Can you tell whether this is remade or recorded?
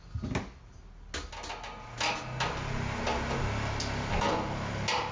recorded